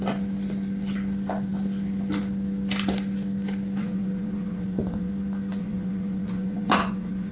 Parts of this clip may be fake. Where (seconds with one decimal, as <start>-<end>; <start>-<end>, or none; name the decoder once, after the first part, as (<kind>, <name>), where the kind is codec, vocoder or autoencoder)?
3.8-5.1 (vocoder, Vocos); 5.5-7.3